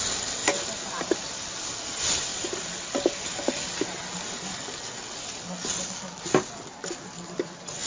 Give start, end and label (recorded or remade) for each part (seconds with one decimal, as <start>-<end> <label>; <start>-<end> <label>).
0.0-2.3 recorded; 2.3-3.2 remade; 3.2-7.9 recorded